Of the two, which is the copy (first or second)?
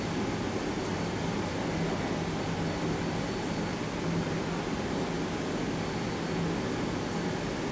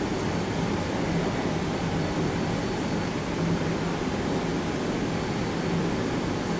second